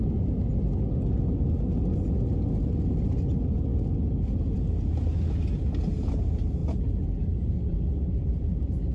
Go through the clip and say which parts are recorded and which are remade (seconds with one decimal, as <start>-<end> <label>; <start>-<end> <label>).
0.0-8.9 recorded